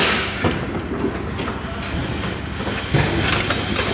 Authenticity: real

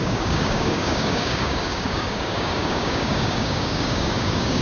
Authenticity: fake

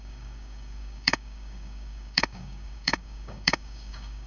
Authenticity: fake